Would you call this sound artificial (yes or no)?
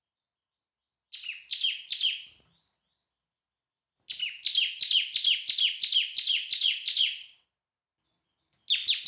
no